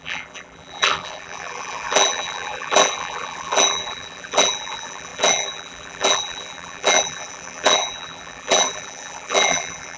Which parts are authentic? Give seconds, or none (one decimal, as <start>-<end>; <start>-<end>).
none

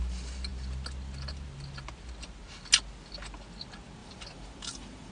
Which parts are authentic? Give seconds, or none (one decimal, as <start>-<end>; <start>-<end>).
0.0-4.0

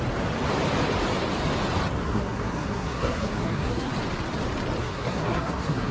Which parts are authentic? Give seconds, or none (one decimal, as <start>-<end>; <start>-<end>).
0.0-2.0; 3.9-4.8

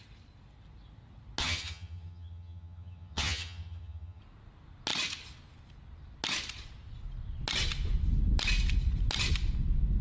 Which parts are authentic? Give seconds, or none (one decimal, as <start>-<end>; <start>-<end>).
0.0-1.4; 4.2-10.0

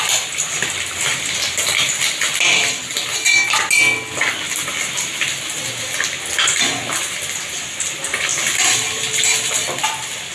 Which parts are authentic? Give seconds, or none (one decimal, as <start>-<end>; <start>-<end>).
0.0-10.3

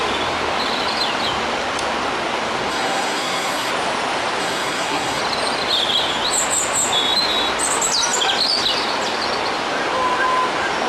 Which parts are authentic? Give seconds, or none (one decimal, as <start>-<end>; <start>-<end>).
0.0-2.7; 3.7-4.4; 5.2-10.9

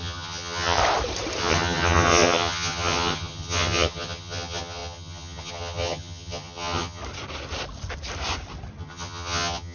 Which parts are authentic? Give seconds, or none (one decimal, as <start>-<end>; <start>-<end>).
0.8-1.4; 7.0-8.8

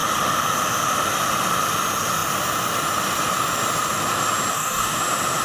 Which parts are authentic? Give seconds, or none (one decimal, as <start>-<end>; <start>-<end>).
0.0-4.5; 5.0-5.4